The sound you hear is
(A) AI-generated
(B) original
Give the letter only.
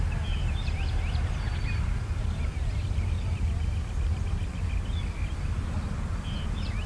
B